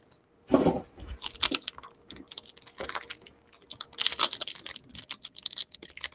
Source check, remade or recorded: recorded